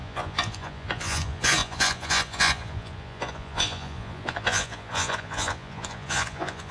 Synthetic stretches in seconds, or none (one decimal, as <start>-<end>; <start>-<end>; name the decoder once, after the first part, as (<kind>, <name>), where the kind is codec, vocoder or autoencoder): 0.0-6.7 (vocoder, Vocos)